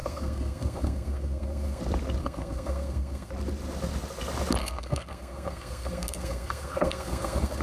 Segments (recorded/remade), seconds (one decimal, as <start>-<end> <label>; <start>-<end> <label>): 0.0-1.8 remade; 1.8-2.2 recorded; 2.2-3.3 remade; 3.3-4.6 recorded; 4.6-7.6 remade